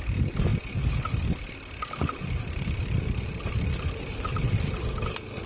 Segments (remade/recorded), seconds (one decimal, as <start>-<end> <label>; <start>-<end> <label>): 0.0-5.5 recorded